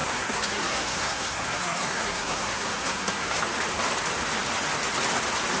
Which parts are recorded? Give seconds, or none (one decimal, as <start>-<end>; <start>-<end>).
3.4-5.6